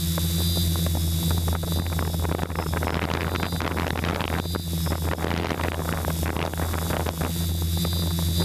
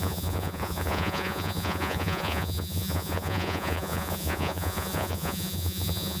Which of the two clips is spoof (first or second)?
second